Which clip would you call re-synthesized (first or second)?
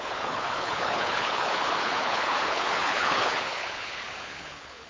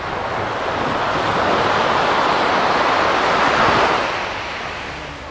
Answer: first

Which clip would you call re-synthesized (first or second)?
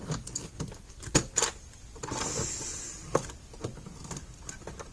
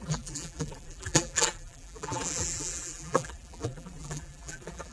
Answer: second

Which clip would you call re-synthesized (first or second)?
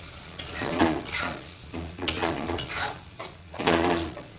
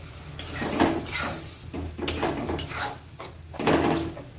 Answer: first